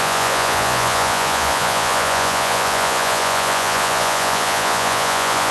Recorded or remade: remade